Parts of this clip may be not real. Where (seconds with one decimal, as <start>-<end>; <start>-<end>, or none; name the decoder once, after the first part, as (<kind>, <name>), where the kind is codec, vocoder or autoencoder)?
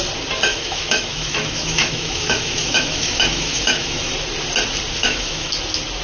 0.5-4.1 (autoencoder, DAC-VAE); 5.0-5.5